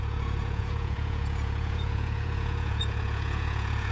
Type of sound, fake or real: fake